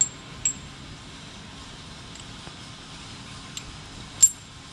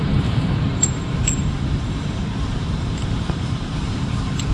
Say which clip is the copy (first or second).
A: second